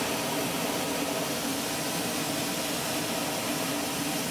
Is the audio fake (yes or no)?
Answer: no